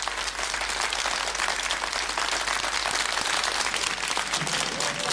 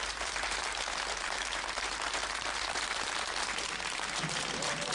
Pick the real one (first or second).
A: first